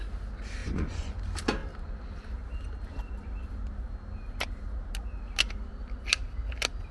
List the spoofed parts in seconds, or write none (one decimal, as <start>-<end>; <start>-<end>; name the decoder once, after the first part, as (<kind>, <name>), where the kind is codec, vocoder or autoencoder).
0.6-1.2 (vocoder, Vocos)